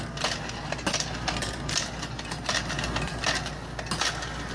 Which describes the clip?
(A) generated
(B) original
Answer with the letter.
B